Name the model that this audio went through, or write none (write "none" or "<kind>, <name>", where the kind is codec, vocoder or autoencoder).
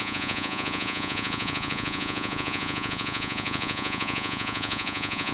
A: vocoder, Vocos